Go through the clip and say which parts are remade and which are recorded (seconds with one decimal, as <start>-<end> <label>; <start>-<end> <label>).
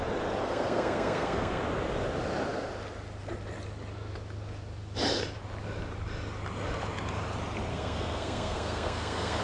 0.0-0.4 recorded; 0.4-1.6 remade; 1.6-7.7 recorded; 7.7-9.4 remade